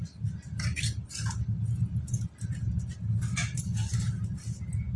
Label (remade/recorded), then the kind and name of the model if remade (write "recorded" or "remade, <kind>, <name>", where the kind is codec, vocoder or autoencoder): recorded